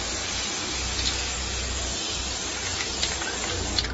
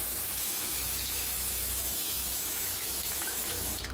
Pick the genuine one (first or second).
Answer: first